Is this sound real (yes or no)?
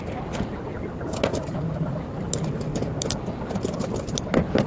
yes